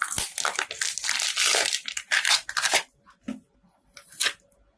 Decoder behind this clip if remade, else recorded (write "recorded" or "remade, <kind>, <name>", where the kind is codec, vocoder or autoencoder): recorded